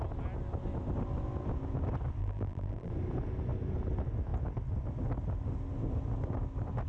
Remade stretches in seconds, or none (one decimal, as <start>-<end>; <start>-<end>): 2.2-2.9